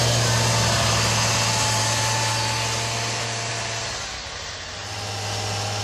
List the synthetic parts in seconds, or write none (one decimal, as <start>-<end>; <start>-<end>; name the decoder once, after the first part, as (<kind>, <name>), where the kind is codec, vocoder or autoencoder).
none